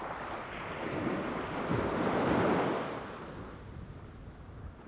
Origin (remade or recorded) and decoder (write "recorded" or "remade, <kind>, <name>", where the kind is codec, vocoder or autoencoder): recorded